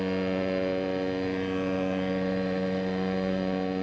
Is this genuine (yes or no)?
no